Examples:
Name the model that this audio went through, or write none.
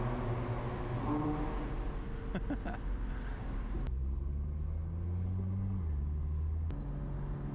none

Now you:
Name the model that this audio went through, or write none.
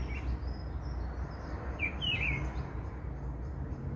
none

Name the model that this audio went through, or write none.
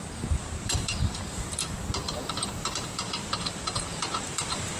vocoder, BigVGAN v2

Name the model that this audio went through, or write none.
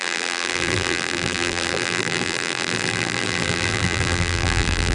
vocoder, BigVGAN v2